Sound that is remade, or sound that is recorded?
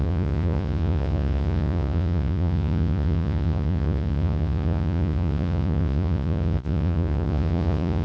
remade